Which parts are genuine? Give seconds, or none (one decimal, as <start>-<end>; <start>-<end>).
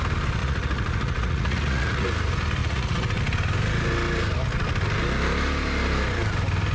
0.0-0.4; 2.1-2.6; 3.2-6.7